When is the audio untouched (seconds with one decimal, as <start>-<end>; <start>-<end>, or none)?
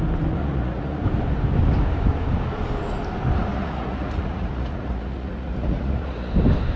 0.0-0.4; 1.0-3.5; 6.3-6.8